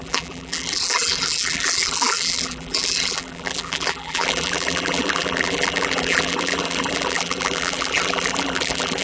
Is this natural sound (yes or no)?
no